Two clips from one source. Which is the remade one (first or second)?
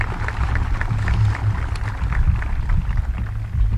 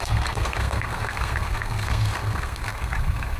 second